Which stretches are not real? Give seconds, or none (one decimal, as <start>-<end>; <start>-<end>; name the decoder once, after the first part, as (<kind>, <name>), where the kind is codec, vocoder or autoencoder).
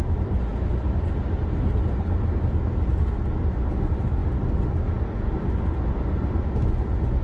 none